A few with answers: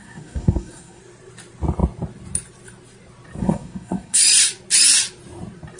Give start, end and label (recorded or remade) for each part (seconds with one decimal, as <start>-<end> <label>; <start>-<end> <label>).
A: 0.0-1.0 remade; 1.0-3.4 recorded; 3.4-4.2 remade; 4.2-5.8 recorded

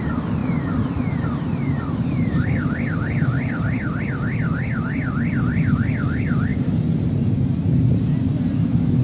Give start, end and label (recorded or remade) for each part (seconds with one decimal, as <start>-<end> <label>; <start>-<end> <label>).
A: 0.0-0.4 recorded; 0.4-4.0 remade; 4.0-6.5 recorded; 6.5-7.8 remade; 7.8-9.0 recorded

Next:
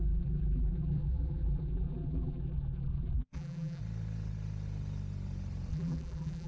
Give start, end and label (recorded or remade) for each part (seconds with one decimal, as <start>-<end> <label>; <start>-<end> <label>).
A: 0.0-3.8 remade; 3.8-5.7 recorded; 5.7-6.5 remade

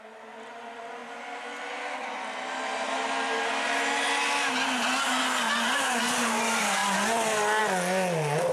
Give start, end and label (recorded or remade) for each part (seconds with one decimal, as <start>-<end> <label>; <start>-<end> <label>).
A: 0.0-8.5 recorded

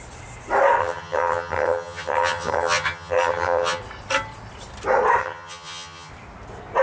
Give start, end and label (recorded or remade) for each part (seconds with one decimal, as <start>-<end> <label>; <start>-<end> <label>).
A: 0.0-0.8 recorded; 0.8-3.8 remade; 3.8-5.2 recorded; 5.2-6.1 remade; 6.1-6.8 recorded

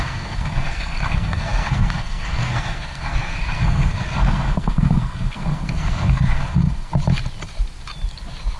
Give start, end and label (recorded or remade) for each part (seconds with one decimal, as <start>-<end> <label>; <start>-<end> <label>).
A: 0.0-6.9 remade; 6.9-8.6 recorded